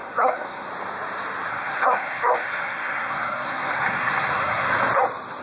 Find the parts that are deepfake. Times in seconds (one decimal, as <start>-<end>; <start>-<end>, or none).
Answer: 0.0-0.7; 1.5-4.7